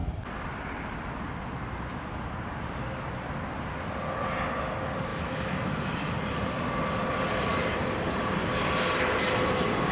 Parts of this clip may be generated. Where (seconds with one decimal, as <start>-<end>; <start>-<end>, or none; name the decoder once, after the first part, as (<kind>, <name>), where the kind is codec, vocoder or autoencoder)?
5.1-5.9 (autoencoder, DAC-VAE)